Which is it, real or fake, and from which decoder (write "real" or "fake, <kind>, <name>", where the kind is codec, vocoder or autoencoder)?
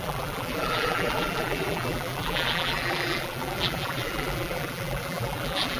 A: fake, vocoder, BigVGAN v2